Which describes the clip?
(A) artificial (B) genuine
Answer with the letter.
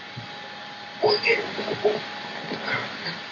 A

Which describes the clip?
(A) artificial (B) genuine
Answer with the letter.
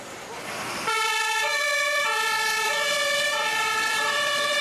A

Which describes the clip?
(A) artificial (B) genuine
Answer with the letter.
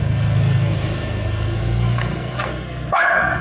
A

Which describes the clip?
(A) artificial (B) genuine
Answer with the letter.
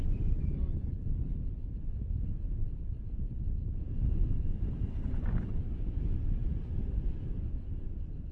B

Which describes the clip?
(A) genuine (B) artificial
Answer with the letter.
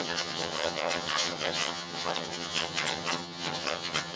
B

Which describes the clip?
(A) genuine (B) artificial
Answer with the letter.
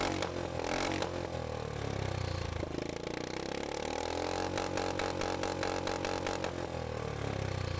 A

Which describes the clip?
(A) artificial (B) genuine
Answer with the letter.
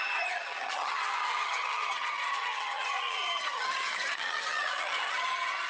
A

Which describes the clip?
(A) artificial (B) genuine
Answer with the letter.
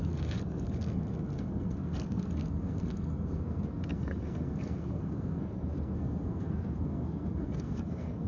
A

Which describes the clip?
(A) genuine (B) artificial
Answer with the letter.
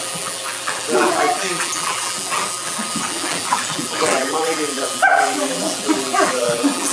B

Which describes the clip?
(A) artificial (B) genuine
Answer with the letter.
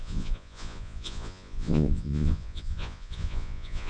A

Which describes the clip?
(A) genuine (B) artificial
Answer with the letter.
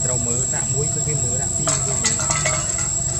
B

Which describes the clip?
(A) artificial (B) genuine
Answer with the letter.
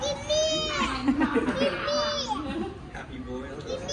B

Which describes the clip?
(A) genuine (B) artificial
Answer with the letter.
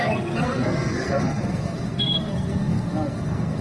B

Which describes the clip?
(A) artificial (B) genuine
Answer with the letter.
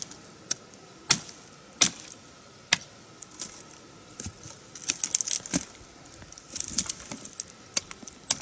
B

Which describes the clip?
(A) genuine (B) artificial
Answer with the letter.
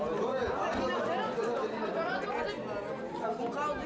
A